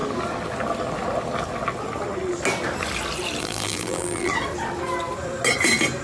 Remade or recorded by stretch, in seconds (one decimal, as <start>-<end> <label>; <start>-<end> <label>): 0.0-3.4 recorded; 3.4-4.3 remade; 4.3-6.0 recorded